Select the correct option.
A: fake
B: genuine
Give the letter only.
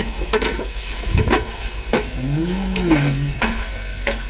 A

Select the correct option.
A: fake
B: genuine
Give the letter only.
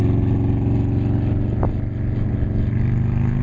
B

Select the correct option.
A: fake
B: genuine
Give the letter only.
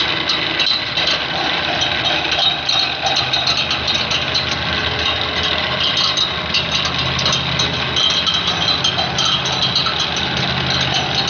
B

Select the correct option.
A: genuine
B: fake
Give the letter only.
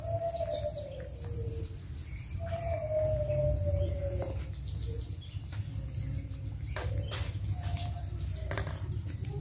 A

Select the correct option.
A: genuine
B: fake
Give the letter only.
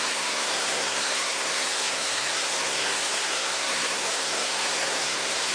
B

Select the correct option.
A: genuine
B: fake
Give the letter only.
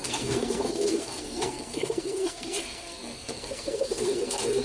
B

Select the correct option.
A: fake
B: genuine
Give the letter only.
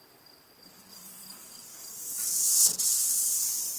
B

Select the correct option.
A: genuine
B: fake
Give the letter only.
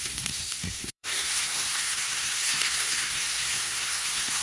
B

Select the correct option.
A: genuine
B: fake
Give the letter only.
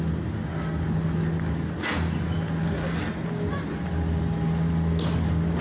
A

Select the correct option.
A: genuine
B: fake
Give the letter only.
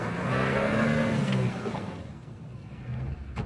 B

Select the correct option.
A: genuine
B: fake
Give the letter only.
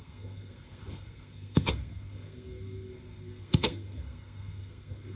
B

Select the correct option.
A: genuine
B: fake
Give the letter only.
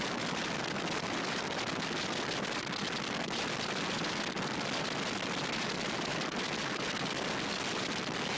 A